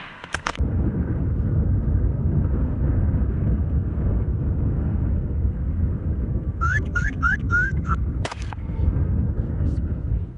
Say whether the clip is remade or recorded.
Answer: remade